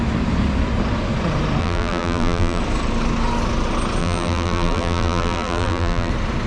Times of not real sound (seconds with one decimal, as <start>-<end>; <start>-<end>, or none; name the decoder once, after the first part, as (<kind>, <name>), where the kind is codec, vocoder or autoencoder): 1.6-2.6 (vocoder, BigVGAN v2); 4.0-6.1